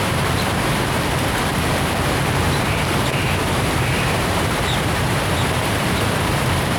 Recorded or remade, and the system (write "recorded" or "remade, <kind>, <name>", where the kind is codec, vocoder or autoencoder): remade, vocoder, BigVGAN v2